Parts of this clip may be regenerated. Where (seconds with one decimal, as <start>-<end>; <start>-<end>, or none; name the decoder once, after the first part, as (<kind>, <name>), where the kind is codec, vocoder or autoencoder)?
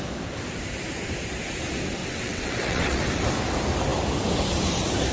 2.0-3.0 (vocoder, WaveNeXt)